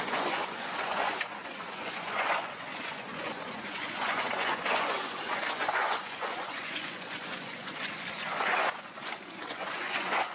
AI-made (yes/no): yes